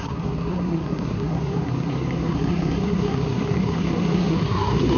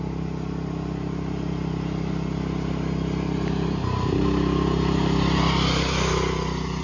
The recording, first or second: second